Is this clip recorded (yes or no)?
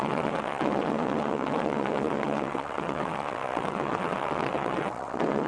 no